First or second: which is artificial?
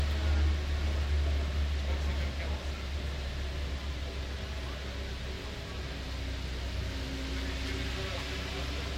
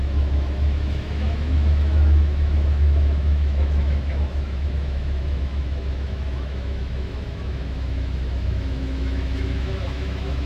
second